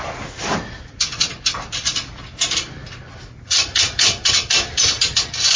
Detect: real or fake fake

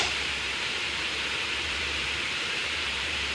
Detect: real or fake fake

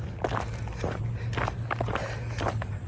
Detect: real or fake real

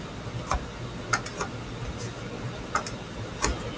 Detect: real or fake real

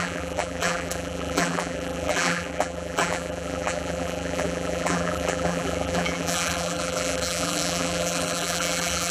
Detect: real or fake fake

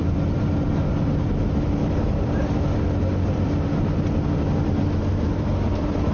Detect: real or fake fake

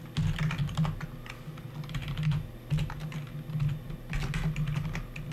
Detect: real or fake real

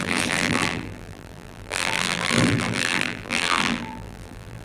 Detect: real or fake fake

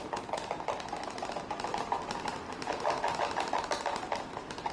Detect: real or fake real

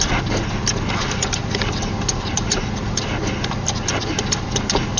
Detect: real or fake real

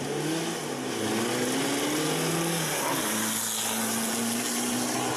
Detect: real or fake real